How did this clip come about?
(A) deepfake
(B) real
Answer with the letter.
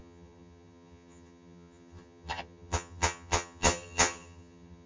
A